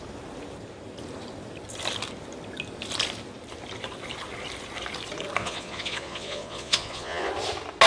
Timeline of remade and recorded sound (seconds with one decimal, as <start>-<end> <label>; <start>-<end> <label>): 0.0-5.4 recorded; 5.4-7.3 remade; 7.3-7.9 recorded